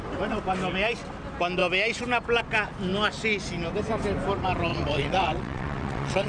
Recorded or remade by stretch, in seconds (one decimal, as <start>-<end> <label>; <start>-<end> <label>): 0.0-4.7 recorded; 4.7-6.3 remade